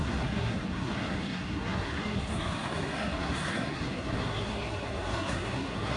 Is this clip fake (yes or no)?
yes